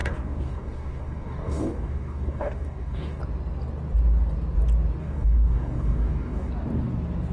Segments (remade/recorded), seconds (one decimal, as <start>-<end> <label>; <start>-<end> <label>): 0.0-3.2 remade; 3.2-5.0 recorded; 5.0-6.5 remade; 6.5-7.3 recorded